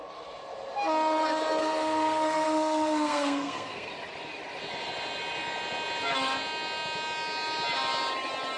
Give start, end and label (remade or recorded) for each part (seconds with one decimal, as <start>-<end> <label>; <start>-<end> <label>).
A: 0.0-1.6 recorded; 1.6-3.9 remade; 3.9-8.6 recorded